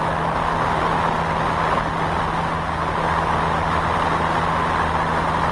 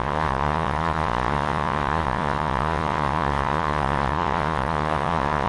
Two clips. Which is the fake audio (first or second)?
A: second